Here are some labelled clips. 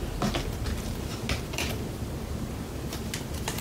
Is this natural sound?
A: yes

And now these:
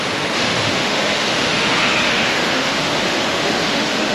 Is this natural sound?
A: no